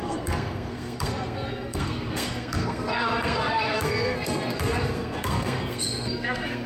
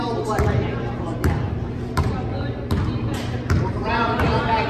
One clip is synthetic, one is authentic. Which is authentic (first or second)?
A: second